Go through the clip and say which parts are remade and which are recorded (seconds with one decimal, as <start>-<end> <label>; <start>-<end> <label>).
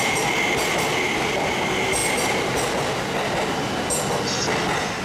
0.0-2.0 remade; 2.0-5.0 recorded